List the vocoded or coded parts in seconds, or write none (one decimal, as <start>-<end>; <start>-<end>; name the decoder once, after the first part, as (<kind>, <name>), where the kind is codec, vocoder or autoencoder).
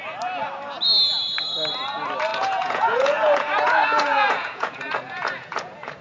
2.3-6.0 (vocoder, Vocos)